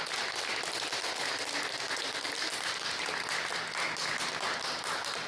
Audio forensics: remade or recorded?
recorded